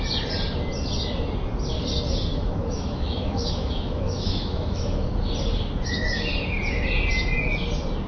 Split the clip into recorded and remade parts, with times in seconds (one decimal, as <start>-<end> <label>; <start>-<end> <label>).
0.0-2.3 recorded; 2.3-5.1 remade; 5.1-8.1 recorded